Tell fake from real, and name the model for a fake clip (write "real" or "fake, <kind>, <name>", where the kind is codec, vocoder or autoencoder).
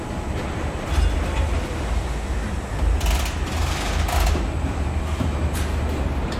real